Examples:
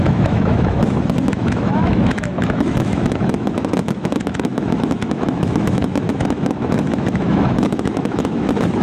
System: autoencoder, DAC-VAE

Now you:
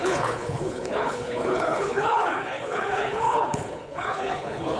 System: codec, HILCodec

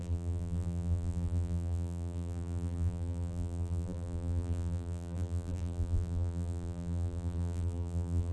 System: vocoder, BigVGAN v2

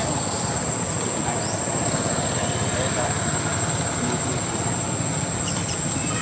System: none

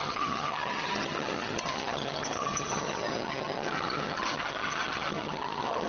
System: vocoder, HiFi-GAN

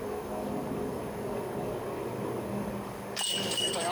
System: codec, DAC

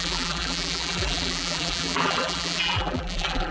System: vocoder, BigVGAN v2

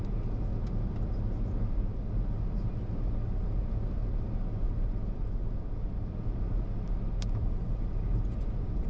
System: none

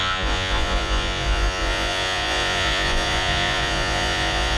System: vocoder, Vocos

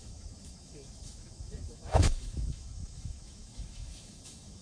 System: autoencoder, DAC-VAE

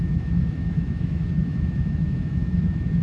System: autoencoder, DAC-VAE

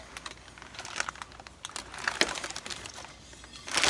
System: none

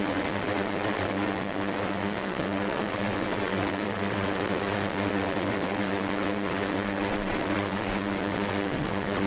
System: vocoder, WaveNeXt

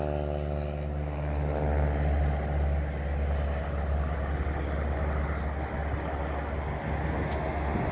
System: none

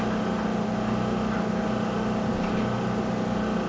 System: none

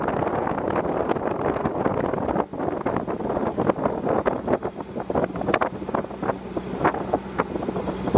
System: none